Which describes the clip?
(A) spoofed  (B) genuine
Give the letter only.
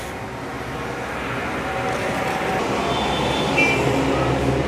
B